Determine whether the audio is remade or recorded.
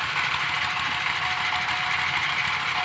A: recorded